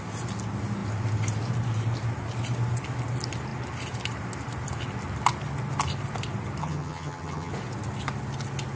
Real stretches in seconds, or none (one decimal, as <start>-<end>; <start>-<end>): 0.0-6.6; 7.5-8.8